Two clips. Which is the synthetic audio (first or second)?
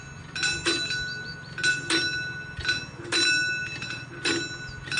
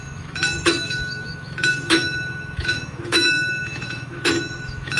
second